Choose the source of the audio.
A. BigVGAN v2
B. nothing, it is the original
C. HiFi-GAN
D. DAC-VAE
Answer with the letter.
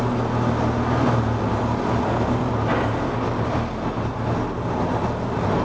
B